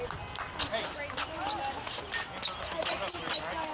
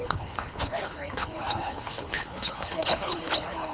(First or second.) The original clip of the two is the first